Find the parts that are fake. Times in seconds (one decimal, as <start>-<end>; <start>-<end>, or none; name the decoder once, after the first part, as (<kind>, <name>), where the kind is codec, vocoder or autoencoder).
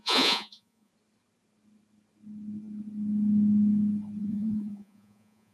0.0-0.9 (vocoder, Vocos); 4.2-5.5